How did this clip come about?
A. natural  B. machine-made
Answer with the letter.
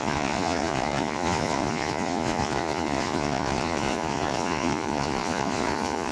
B